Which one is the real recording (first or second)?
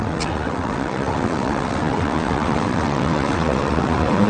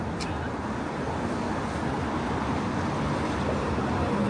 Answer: second